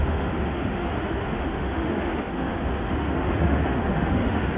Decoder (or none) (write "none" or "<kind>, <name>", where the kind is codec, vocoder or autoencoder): autoencoder, DAC-VAE